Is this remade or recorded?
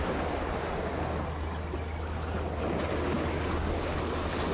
recorded